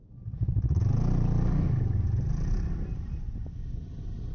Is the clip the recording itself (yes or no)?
yes